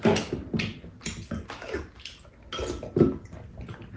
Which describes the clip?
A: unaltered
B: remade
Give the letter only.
A